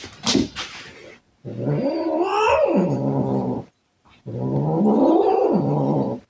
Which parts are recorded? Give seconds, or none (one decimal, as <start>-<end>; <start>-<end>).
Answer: 1.5-2.6; 4.3-5.6